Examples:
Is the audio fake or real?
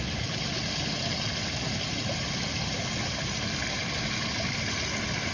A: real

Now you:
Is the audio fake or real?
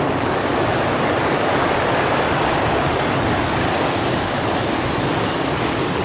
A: fake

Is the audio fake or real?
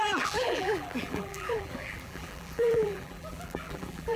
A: fake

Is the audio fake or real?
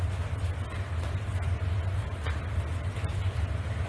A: real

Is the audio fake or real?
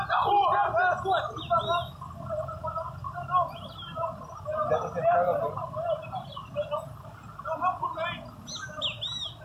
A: real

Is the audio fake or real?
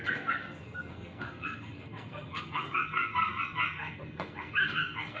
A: fake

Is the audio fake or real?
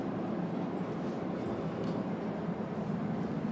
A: real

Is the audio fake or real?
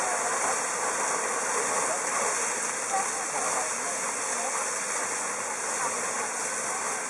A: real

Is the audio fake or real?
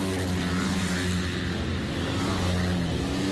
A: real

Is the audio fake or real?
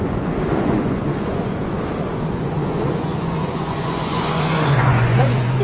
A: fake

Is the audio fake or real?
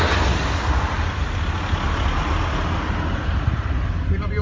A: real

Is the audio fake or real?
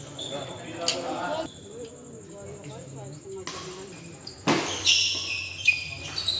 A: real